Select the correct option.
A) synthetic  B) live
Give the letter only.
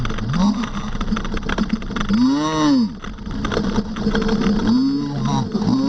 B